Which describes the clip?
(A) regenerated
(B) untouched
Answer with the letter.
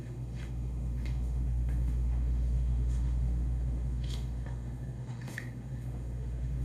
A